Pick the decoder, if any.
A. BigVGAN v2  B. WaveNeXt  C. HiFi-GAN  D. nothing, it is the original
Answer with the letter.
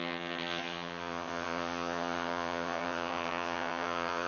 C